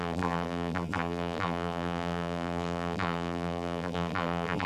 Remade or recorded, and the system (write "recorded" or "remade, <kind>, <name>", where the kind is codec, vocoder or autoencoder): remade, vocoder, BigVGAN v2